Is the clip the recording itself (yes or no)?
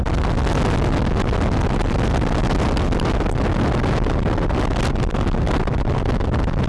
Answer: yes